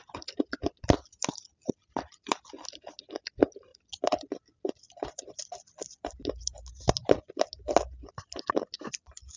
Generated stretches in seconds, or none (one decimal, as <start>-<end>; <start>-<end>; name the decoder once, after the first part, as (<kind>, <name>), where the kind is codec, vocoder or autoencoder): none